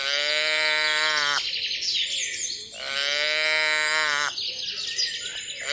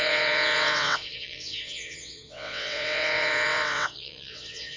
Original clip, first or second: first